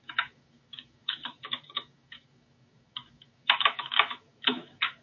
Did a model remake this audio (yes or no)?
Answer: yes